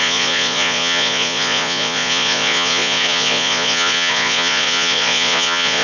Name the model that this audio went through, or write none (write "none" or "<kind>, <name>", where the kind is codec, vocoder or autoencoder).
vocoder, Vocos